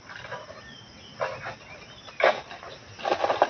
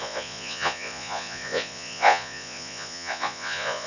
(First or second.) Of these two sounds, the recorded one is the first